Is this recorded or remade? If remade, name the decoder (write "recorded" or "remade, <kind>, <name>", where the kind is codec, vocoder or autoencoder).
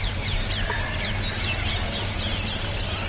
recorded